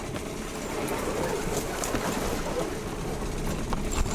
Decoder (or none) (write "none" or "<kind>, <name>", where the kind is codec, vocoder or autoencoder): none